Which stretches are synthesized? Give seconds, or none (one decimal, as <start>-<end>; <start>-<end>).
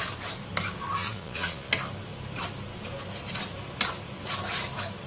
1.0-1.7